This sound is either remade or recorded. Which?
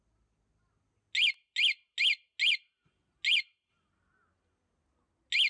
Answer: recorded